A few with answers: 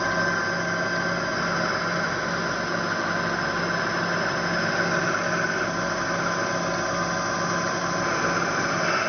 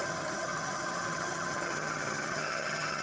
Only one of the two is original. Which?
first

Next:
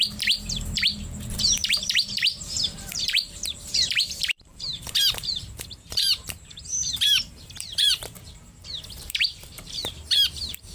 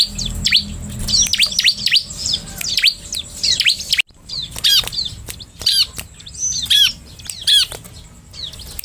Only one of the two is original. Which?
second